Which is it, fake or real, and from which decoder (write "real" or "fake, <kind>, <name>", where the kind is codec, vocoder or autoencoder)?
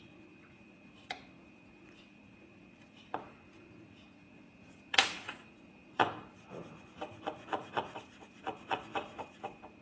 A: fake, vocoder, Vocos